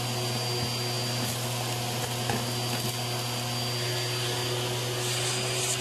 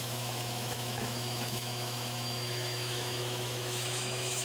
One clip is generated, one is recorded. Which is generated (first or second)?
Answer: second